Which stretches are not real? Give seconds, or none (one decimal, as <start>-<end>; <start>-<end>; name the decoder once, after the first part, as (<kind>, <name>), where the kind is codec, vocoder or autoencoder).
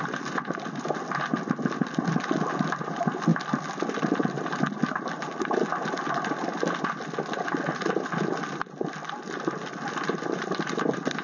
none